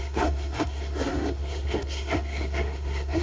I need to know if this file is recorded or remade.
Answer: remade